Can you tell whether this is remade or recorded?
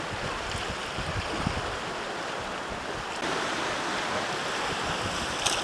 recorded